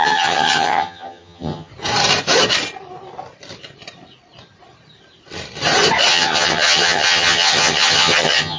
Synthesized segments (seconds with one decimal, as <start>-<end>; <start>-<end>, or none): 0.0-1.7; 6.1-8.6